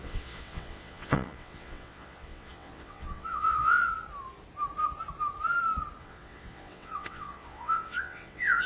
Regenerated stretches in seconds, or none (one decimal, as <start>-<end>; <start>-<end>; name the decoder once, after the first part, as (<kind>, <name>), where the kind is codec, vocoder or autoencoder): 0.0-3.9 (vocoder, WaveNeXt); 6.0-8.7